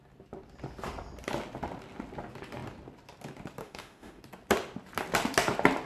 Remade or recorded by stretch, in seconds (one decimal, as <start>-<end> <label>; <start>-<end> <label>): 0.0-3.6 recorded; 3.6-4.2 remade; 4.2-5.9 recorded